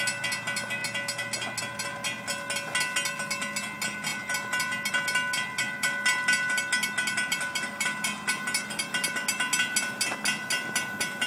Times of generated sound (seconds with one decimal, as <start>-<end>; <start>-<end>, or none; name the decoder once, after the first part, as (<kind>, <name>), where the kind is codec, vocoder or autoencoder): none

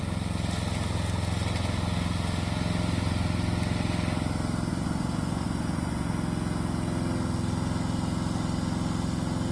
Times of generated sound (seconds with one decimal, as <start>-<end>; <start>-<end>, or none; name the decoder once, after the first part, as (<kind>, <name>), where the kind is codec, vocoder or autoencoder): 4.7-6.1 (vocoder, Vocos)

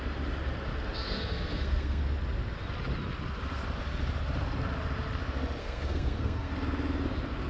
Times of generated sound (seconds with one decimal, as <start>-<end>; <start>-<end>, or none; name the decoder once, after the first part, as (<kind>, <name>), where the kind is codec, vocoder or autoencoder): 1.0-2.0 (codec, SNAC); 5.6-6.5

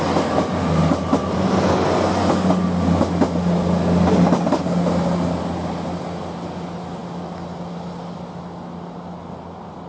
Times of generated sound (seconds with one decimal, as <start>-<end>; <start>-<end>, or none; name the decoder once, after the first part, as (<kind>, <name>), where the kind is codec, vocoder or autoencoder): none

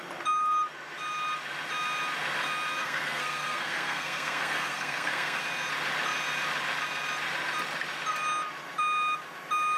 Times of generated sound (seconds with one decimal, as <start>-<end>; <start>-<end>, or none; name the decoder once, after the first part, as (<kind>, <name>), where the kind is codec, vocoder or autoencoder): 2.8-5.4 (codec, SNAC)

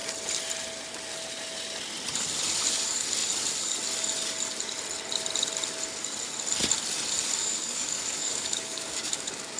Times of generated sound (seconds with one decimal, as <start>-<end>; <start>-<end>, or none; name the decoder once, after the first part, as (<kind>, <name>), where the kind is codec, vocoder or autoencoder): 7.4-9.6 (codec, DAC)

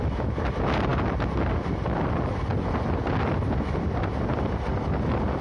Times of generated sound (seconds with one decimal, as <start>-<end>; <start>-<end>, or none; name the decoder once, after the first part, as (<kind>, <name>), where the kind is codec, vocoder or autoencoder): none

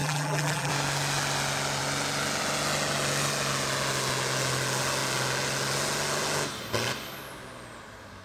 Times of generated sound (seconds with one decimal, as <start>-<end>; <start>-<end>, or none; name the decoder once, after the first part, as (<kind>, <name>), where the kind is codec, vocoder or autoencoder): 0.0-0.7 (vocoder, BigVGAN v2)